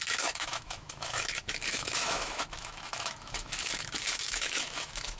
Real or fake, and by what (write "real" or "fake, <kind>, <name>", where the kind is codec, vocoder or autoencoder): fake, autoencoder, DAC-VAE